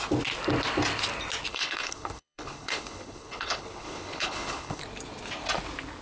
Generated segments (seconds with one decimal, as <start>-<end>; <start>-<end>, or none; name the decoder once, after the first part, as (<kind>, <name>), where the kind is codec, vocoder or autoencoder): 1.5-4.8 (codec, HILCodec)